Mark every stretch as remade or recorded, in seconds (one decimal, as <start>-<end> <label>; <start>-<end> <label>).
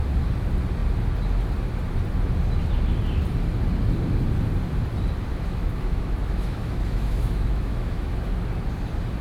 0.0-5.3 recorded; 5.3-8.3 remade; 8.3-9.2 recorded